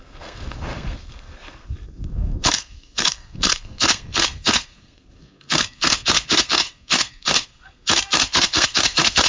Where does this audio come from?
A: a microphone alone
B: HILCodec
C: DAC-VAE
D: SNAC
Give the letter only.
D